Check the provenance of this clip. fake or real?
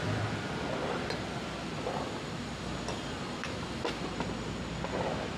real